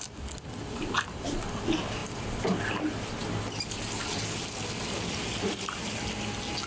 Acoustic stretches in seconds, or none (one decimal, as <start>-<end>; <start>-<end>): 0.0-6.7